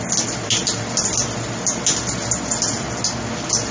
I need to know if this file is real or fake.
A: real